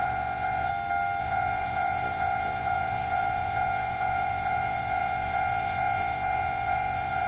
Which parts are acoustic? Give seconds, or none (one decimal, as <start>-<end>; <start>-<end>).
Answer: 0.7-1.2